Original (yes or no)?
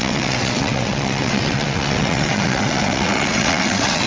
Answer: no